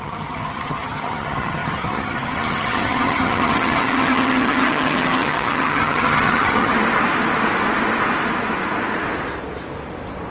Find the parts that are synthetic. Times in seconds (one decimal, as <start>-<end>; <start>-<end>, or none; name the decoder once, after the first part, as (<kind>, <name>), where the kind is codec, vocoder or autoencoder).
0.0-6.7 (vocoder, HiFi-GAN)